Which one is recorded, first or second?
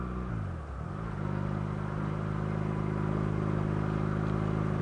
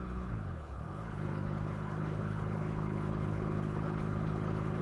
first